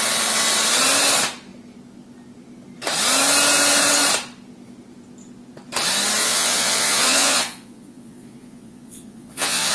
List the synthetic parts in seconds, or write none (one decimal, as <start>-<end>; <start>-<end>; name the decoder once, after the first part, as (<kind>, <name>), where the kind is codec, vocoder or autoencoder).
6.2-9.7 (vocoder, Vocos)

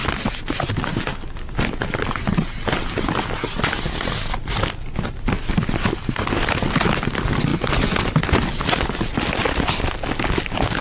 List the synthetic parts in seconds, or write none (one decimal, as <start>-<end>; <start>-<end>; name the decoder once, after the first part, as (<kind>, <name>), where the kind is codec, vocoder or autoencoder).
none